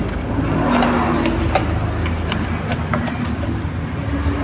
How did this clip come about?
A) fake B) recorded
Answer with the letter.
B